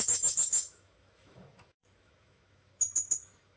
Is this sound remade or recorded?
remade